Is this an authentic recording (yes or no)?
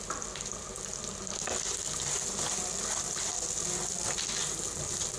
yes